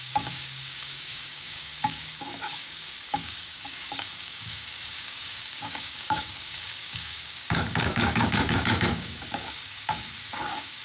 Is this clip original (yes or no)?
no